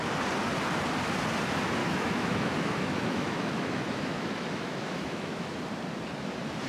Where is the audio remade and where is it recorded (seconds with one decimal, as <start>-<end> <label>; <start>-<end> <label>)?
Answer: 0.0-1.8 recorded; 1.8-5.6 remade; 5.6-6.7 recorded